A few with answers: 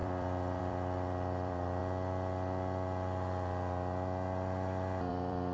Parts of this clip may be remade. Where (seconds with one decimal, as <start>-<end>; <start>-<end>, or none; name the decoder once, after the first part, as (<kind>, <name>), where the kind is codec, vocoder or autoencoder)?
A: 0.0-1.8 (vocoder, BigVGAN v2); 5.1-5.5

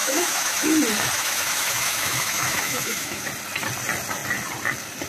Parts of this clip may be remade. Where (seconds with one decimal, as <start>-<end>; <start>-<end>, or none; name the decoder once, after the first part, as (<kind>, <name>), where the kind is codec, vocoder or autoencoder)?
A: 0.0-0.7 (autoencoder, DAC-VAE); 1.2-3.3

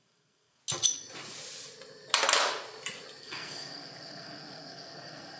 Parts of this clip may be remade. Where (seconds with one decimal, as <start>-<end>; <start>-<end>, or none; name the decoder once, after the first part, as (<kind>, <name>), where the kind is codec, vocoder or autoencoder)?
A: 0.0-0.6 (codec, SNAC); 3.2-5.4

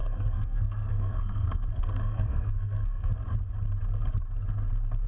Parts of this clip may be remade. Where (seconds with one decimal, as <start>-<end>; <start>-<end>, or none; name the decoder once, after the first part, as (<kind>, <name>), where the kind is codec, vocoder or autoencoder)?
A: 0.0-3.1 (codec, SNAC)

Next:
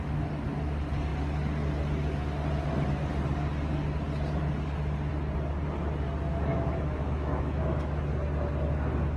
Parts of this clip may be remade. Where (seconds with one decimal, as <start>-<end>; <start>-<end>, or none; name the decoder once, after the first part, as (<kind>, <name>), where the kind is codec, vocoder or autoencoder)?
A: 6.3-8.0 (autoencoder, DAC-VAE)